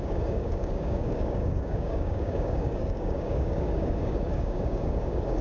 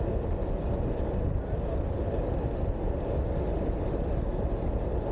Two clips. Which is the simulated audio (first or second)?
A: first